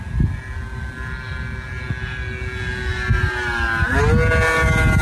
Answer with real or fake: real